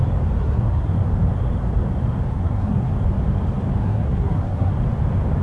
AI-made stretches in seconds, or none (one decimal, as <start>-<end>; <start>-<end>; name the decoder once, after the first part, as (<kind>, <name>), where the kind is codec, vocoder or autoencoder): 0.4-0.9 (codec, SNAC); 2.3-2.9; 3.8-4.7